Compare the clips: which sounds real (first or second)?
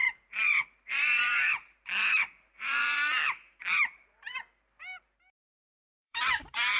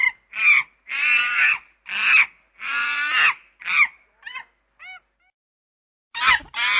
second